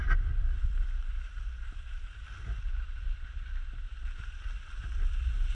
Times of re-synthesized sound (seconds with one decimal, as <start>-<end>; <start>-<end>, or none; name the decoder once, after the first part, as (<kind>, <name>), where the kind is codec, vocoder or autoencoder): 0.0-3.3 (vocoder, BigVGAN v2)